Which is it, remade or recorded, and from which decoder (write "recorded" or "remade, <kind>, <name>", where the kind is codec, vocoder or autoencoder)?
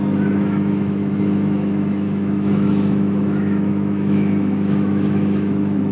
remade, autoencoder, DAC-VAE